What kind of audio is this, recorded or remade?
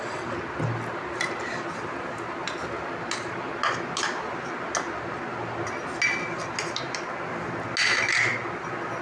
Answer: recorded